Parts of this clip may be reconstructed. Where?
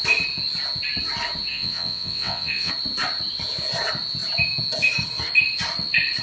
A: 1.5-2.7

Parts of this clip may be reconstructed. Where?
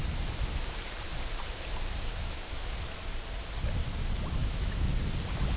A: 2.1-2.7; 4.4-4.9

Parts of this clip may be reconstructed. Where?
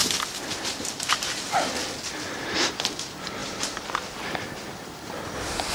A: 0.0-1.7; 3.4-5.3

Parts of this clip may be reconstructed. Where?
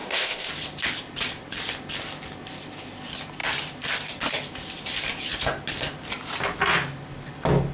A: 0.0-0.5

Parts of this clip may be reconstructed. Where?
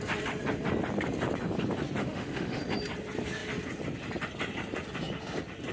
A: 2.0-2.6